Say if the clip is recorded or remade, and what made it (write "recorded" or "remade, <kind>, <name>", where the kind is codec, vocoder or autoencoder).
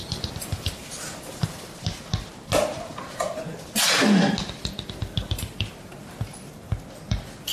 recorded